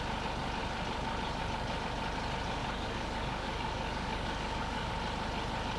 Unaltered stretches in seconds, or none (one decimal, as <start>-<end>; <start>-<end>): 0.0-2.6; 4.9-5.8